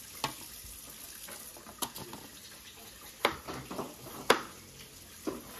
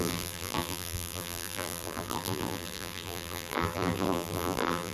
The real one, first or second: first